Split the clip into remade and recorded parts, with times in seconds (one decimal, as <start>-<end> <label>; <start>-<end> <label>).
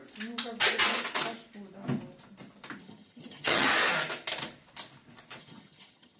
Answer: 0.0-2.8 recorded; 2.8-3.7 remade; 3.7-5.4 recorded; 5.4-6.2 remade